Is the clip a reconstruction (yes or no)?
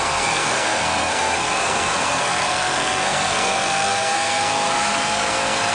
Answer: yes